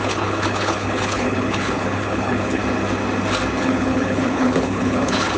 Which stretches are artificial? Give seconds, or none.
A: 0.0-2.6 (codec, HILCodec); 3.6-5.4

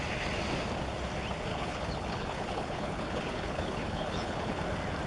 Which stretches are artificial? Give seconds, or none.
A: 1.5-4.6 (codec, HILCodec)

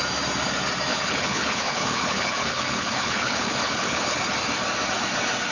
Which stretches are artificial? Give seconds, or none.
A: 0.9-4.2 (codec, HILCodec)

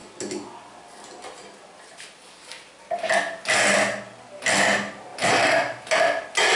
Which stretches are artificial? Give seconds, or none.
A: none